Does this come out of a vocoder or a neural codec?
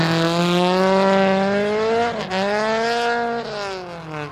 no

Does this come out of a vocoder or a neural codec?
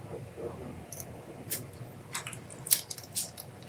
yes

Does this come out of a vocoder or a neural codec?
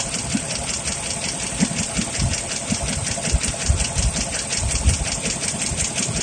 yes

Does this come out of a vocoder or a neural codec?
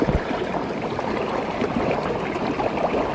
yes